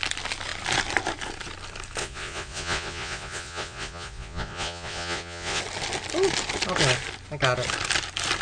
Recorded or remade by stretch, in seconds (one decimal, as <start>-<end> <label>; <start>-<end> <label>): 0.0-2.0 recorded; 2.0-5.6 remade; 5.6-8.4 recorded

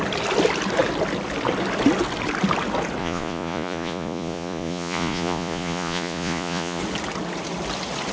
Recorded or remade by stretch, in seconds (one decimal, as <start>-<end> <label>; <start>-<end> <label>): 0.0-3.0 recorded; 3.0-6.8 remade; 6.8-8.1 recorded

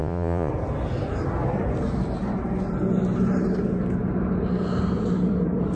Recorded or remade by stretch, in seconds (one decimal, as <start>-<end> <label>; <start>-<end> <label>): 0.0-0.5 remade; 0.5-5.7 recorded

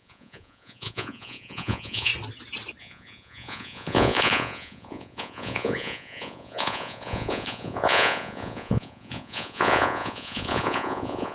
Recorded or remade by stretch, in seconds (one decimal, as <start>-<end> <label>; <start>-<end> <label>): 0.0-2.1 remade; 2.1-2.8 recorded; 2.8-11.3 remade

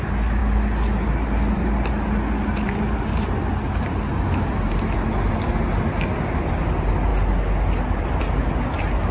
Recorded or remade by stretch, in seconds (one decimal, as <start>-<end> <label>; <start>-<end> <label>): 0.0-9.1 recorded

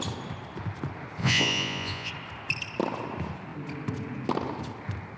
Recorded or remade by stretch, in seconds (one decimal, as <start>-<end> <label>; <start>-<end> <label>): 0.0-1.2 recorded; 1.2-2.1 remade; 2.1-5.2 recorded